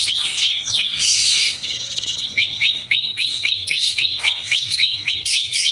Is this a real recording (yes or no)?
no